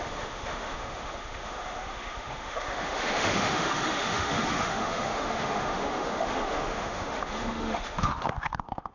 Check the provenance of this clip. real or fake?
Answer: fake